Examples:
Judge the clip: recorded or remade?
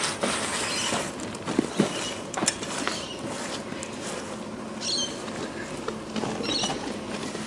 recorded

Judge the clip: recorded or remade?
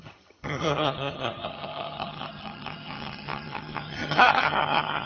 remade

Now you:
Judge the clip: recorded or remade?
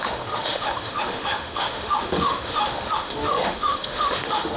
remade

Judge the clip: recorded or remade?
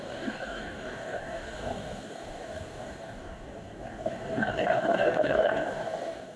remade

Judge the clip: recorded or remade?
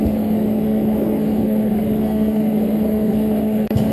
remade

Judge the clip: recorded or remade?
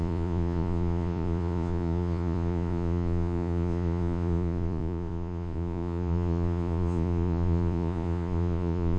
remade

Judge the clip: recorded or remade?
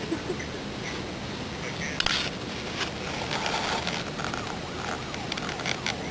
recorded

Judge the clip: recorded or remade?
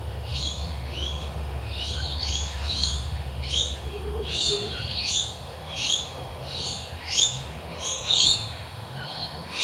remade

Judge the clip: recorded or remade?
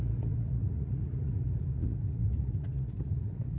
remade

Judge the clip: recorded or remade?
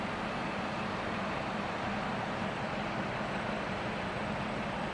recorded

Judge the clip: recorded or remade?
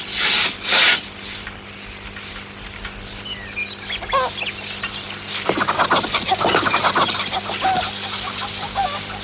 recorded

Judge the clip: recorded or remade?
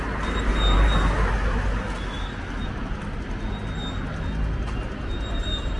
recorded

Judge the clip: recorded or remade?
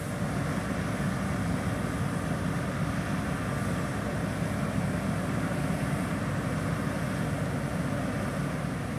recorded